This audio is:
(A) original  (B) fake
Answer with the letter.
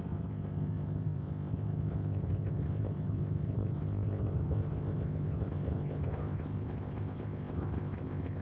B